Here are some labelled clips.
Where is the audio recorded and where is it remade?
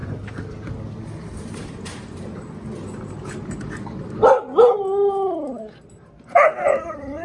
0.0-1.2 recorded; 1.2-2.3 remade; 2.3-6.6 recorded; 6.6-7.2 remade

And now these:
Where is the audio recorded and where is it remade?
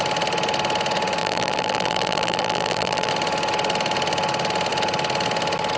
0.0-1.2 recorded; 1.2-3.1 remade; 3.1-5.8 recorded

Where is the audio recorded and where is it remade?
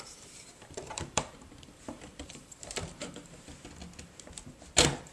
0.0-3.5 remade; 3.5-5.1 recorded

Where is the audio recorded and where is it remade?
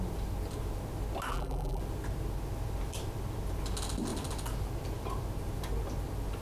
0.0-1.3 recorded; 1.3-1.8 remade; 1.8-6.4 recorded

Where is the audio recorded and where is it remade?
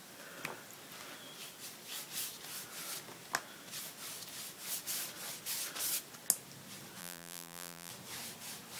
0.0-7.0 recorded; 7.0-7.9 remade; 7.9-8.8 recorded